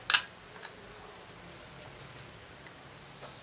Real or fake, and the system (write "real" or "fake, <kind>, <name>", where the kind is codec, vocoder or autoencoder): real